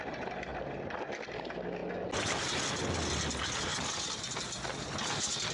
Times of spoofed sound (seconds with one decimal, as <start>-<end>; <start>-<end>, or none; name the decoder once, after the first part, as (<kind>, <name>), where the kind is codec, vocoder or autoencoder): 3.7-4.2 (vocoder, BigVGAN v2)

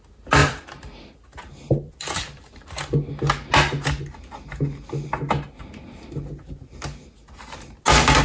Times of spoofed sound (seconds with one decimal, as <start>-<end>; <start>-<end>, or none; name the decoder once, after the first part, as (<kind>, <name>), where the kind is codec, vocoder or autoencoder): 0.4-2.8 (vocoder, BigVGAN v2)